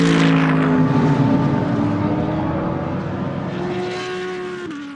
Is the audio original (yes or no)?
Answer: yes